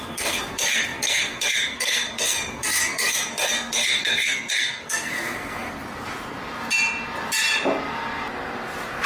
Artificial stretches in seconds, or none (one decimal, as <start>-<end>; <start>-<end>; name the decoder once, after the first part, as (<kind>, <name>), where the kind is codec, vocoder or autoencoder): 0.0-5.8 (codec, SNAC)